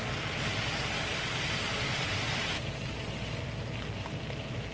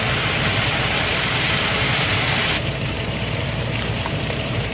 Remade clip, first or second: second